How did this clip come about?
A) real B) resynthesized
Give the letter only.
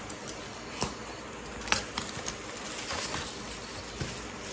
A